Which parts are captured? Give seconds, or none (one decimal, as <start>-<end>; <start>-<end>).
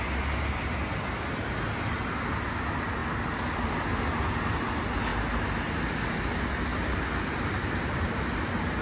0.0-8.8